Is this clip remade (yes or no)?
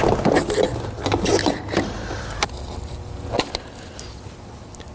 no